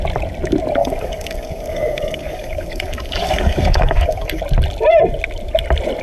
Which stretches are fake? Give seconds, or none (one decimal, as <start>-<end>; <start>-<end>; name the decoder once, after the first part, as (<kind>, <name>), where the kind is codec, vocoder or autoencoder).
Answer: 0.8-4.4 (codec, DAC)